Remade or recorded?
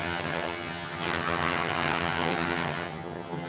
remade